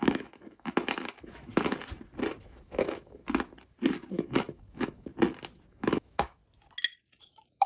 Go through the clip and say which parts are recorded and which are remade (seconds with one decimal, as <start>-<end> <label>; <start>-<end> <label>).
0.0-1.5 remade; 1.5-2.4 recorded; 2.4-3.2 remade; 3.2-4.1 recorded; 4.1-5.1 remade; 5.1-5.7 recorded; 5.7-6.4 remade; 6.4-7.2 recorded; 7.2-7.7 remade